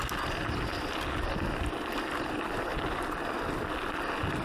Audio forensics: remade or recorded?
recorded